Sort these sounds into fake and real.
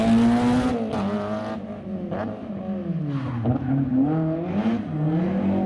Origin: real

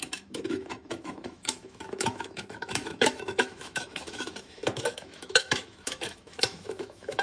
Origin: fake